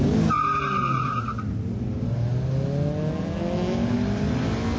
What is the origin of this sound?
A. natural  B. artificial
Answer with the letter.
A